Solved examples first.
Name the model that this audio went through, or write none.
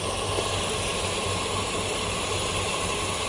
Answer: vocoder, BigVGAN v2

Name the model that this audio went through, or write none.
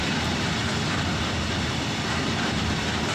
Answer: vocoder, BigVGAN v2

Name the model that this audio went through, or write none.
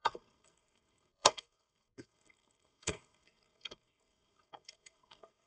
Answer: codec, SNAC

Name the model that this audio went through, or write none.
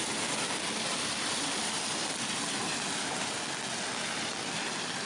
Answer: none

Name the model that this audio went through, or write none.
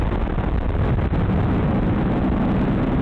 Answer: none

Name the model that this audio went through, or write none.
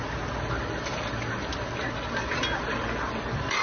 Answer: none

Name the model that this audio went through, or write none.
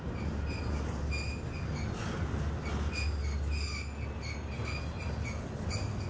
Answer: none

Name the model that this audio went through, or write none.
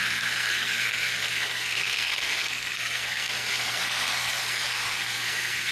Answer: codec, SNAC